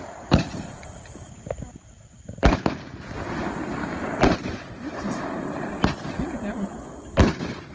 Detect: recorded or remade remade